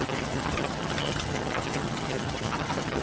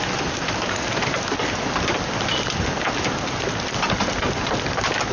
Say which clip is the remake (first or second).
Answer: first